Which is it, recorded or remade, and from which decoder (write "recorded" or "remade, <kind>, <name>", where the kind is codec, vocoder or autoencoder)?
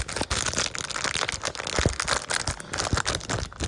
recorded